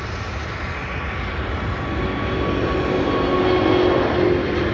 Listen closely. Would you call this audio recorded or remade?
recorded